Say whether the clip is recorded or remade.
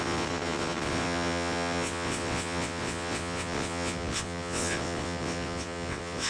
remade